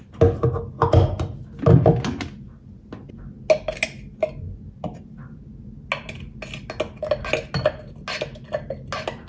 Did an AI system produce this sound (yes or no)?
no